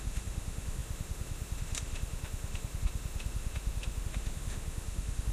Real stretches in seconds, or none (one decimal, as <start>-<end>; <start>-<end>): none